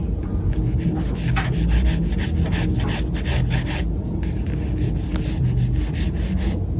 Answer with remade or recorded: recorded